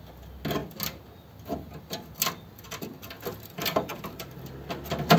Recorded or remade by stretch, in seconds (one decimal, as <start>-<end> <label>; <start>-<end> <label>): 0.0-3.3 recorded; 3.3-4.4 remade; 4.4-5.2 recorded